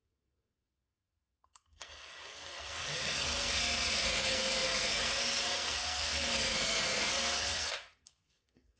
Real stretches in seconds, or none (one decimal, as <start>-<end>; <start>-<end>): none